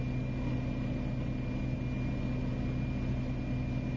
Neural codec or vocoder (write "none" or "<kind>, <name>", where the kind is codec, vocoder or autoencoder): none